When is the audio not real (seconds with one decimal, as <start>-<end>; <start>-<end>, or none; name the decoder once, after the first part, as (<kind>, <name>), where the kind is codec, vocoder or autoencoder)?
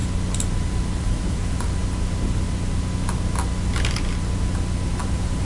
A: 1.0-1.8 (vocoder, BigVGAN v2); 5.0-5.4